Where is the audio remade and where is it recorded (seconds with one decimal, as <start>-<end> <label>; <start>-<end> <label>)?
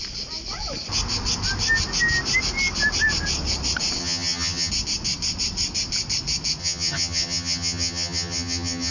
0.0-4.0 recorded; 4.0-4.7 remade; 4.7-6.6 recorded; 6.6-8.9 remade